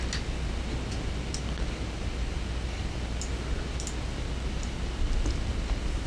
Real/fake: real